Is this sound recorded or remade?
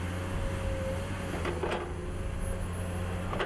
recorded